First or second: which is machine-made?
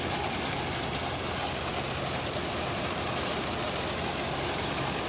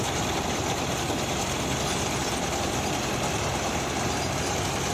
second